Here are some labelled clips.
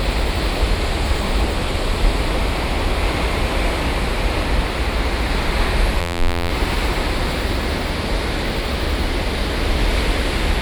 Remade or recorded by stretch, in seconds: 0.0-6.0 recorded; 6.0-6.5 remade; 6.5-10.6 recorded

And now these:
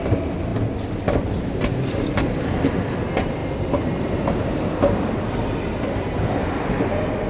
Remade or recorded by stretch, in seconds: 0.0-3.4 recorded; 3.4-5.1 remade; 5.1-7.3 recorded

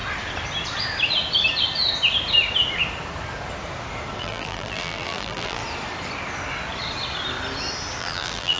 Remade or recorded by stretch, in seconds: 0.0-4.2 recorded; 4.2-5.6 remade; 5.6-8.0 recorded; 8.0-8.6 remade